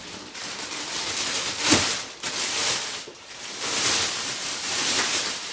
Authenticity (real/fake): real